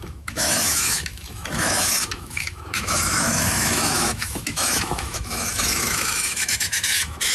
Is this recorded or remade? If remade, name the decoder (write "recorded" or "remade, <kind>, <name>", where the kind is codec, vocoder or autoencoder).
remade, autoencoder, DAC-VAE